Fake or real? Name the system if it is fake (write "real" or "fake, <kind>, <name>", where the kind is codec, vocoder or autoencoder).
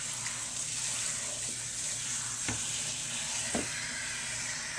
real